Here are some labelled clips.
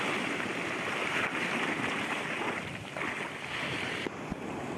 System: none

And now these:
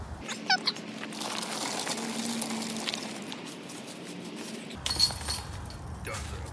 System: none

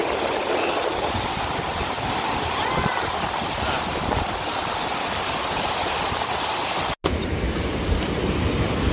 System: none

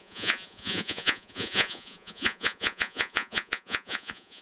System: vocoder, Vocos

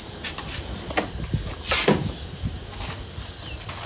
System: none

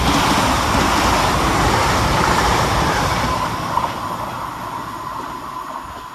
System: none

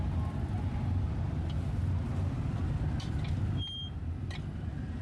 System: none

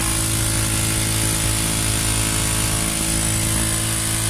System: none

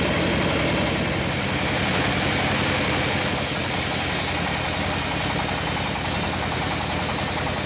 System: none